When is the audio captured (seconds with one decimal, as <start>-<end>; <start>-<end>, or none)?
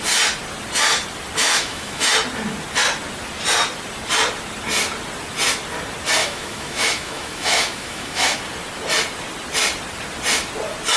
0.0-1.4; 2.1-6.2; 8.4-11.0